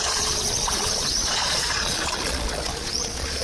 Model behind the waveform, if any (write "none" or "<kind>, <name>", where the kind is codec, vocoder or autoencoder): vocoder, Vocos